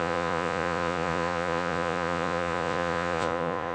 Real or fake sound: fake